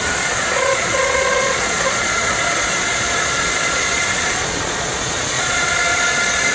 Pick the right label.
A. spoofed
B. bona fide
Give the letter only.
A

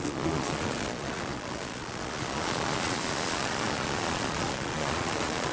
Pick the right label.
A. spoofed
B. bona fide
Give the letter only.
A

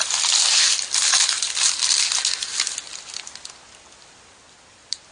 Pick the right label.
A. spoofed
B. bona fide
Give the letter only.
B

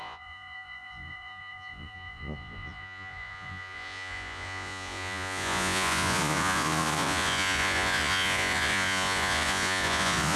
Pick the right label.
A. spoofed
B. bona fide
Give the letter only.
A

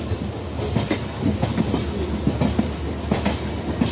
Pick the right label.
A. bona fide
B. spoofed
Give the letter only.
A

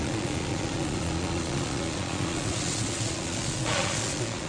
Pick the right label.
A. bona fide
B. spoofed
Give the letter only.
B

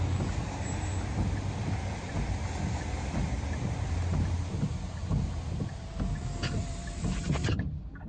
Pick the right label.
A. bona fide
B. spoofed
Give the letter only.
A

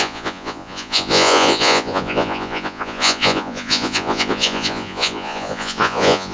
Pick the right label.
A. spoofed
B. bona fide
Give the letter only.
A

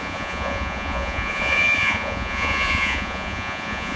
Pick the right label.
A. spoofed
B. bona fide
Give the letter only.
A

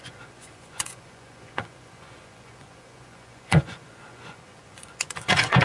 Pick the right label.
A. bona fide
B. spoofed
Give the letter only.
B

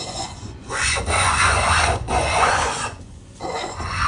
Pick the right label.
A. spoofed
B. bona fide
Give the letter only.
A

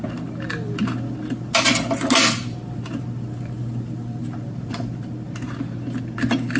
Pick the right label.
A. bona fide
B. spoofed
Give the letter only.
A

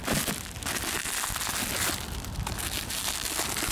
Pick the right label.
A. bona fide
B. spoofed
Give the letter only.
A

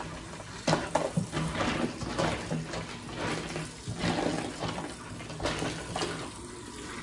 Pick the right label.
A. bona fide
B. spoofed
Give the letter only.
A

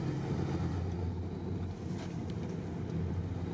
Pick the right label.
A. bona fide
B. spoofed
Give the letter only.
A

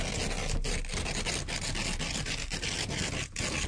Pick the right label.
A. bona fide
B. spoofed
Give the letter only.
A